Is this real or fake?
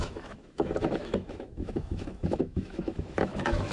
fake